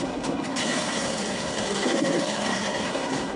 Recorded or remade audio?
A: remade